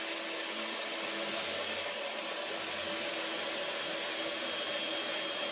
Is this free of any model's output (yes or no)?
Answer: yes